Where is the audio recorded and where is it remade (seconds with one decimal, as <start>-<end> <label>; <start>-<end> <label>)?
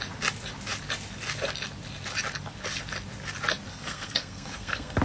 0.0-3.7 recorded; 3.7-5.0 remade